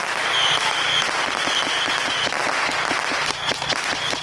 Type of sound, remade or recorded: recorded